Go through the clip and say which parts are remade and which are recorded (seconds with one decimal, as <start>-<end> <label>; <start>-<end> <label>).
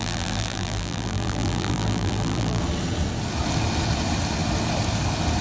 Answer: 0.0-2.6 remade; 2.6-5.4 recorded